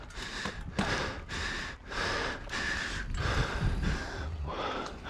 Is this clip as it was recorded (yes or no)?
yes